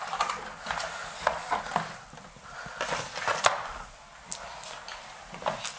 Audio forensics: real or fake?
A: real